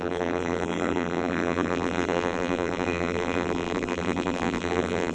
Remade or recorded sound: remade